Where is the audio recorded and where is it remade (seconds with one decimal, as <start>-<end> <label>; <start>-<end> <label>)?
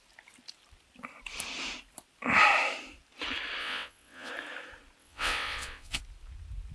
0.0-3.6 recorded; 3.6-4.3 remade; 4.3-5.0 recorded; 5.0-6.0 remade; 6.0-6.7 recorded